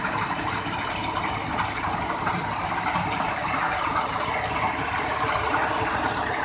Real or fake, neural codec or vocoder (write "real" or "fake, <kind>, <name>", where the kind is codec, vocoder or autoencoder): real